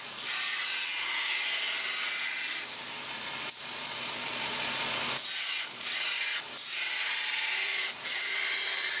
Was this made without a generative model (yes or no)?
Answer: yes